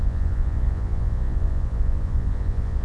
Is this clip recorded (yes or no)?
no